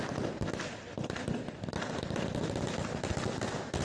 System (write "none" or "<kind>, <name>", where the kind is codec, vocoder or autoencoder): none